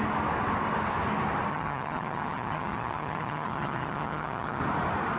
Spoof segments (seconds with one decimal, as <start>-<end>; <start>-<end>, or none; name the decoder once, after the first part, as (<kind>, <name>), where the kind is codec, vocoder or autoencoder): 1.5-4.6 (vocoder, HiFi-GAN)